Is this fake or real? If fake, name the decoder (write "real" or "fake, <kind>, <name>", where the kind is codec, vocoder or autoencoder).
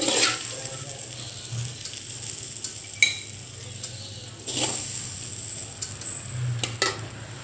real